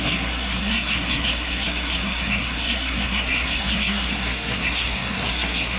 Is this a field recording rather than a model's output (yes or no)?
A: no